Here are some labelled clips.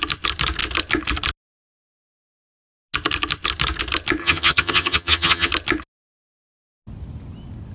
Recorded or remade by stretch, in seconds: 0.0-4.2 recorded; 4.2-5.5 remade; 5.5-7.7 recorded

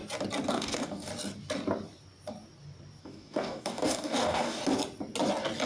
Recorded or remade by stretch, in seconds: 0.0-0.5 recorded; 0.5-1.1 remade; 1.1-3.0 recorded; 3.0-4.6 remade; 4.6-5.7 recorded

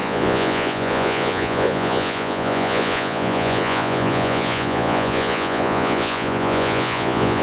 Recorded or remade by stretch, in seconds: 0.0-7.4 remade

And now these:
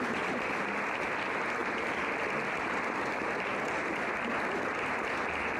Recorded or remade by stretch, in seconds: 0.0-5.6 recorded

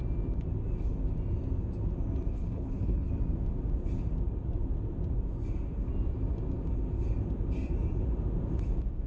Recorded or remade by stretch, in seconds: 0.0-2.3 recorded; 2.3-3.1 remade; 3.1-9.1 recorded

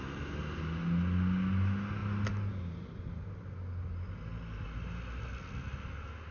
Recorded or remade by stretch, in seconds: 0.0-6.3 recorded